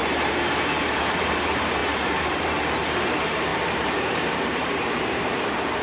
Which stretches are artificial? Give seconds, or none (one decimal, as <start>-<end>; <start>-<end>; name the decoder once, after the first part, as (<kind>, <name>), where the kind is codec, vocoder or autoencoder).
0.0-5.8 (vocoder, BigVGAN v2)